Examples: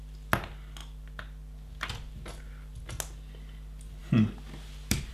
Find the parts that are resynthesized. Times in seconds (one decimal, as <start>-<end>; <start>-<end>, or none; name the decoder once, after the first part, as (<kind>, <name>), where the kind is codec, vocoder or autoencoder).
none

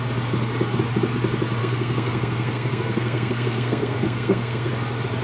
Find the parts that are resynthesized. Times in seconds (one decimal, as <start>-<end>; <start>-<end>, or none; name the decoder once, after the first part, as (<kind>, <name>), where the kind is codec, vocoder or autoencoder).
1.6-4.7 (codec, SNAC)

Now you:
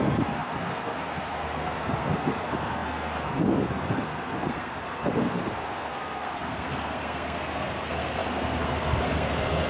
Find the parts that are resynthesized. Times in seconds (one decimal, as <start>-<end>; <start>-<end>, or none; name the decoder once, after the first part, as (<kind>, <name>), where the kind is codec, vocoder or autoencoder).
0.0-9.7 (codec, SNAC)